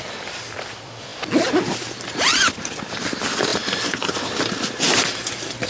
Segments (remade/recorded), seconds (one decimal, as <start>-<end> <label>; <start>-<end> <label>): 0.0-5.7 recorded